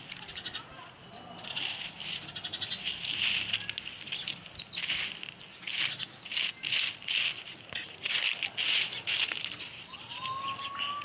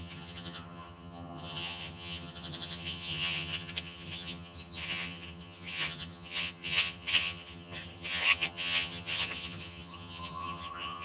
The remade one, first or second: second